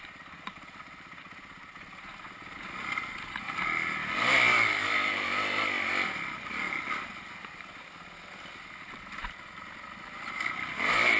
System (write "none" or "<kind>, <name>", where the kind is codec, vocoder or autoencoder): none